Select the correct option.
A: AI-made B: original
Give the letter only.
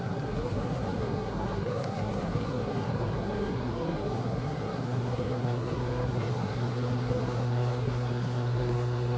A